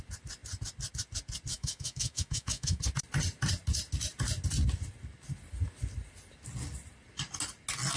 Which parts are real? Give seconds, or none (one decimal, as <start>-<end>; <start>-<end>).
0.0-1.5; 2.8-8.0